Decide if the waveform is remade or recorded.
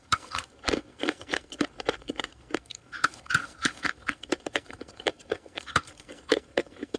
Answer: remade